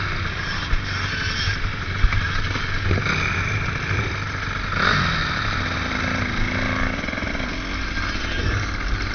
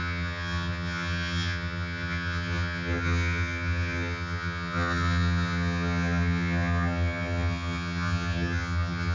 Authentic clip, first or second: first